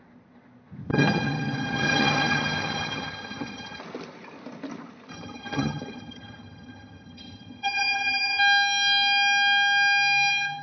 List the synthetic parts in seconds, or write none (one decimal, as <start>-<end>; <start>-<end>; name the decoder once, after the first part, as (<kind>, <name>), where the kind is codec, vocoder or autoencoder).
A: 0.9-3.8 (vocoder, HiFi-GAN); 5.1-8.4

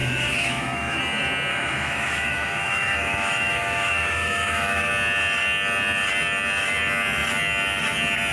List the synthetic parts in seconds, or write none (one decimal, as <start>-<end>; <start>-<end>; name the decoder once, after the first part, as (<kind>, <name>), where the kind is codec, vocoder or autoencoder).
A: 0.0-1.0 (autoencoder, DAC-VAE); 1.5-4.9

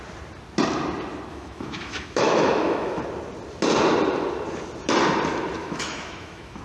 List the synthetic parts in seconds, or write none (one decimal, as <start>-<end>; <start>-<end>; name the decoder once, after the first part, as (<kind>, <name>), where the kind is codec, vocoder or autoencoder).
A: 1.3-3.0 (autoencoder, DAC-VAE); 5.6-6.6

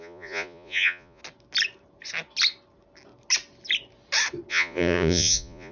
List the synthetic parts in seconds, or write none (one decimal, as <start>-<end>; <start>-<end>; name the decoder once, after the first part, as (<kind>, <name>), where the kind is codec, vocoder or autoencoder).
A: 0.0-1.2 (vocoder, Vocos); 4.5-5.7

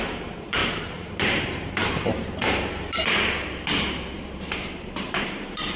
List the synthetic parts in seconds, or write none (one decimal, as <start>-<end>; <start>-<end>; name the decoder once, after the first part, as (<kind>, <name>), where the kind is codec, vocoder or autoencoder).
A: 0.0-5.8 (vocoder, BigVGAN v2)

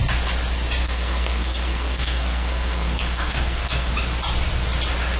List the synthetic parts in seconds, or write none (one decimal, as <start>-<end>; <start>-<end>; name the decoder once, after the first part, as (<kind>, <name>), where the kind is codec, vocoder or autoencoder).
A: 0.8-3.9 (codec, SNAC)

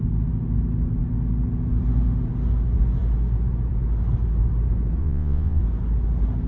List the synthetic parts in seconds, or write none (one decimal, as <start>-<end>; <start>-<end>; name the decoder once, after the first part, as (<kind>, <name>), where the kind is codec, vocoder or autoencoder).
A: 5.0-5.6 (vocoder, Vocos)

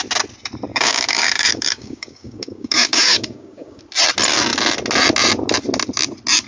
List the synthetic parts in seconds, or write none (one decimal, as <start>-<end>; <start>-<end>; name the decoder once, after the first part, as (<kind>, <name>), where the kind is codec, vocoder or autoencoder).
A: 0.7-3.8 (codec, DAC)